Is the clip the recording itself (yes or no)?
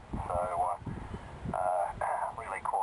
no